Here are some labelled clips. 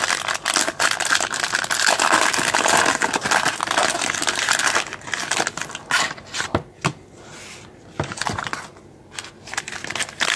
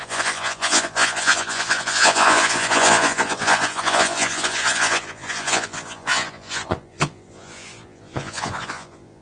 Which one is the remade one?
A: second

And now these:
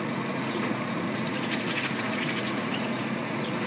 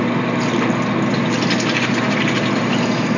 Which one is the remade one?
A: first